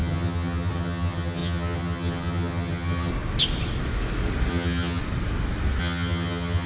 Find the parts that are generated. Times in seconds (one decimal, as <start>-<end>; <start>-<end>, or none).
0.0-3.1; 4.5-5.0; 5.8-6.7